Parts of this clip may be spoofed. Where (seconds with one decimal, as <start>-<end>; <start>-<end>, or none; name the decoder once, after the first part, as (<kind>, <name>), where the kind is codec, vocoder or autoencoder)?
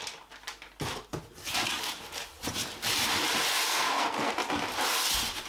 3.5-4.3 (codec, SNAC)